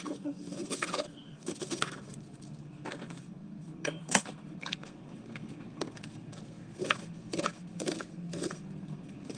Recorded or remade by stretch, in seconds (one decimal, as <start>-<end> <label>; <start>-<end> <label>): 0.0-9.4 remade